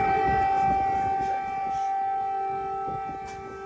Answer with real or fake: real